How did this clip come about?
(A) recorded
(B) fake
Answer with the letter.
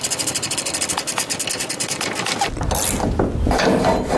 A